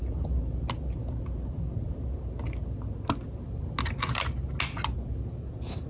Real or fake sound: real